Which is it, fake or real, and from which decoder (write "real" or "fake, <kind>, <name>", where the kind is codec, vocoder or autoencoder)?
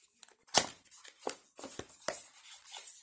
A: real